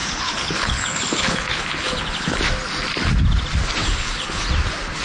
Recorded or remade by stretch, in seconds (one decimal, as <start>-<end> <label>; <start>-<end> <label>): 0.0-2.4 remade; 2.4-3.8 recorded; 3.8-4.4 remade; 4.4-5.0 recorded